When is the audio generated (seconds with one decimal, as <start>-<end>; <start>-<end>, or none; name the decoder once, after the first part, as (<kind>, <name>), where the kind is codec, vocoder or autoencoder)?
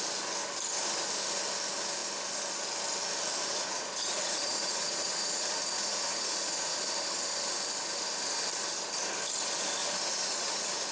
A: 3.5-6.8 (vocoder, Vocos); 9.8-10.9